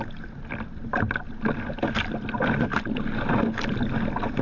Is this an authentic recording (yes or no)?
yes